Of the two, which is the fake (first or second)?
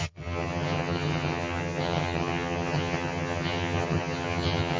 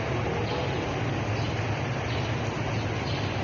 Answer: first